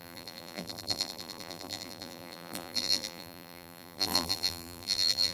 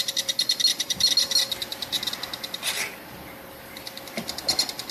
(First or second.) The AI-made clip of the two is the first